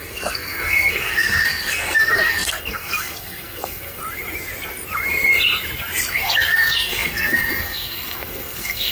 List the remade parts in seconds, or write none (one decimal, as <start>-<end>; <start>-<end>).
0.0-4.0; 6.1-8.9